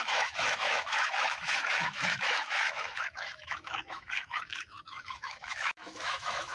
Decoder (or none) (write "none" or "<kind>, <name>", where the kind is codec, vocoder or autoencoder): autoencoder, DAC-VAE